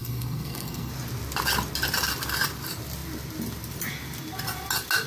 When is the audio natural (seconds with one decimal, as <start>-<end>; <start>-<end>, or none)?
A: 0.9-5.1